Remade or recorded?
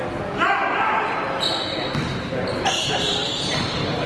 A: recorded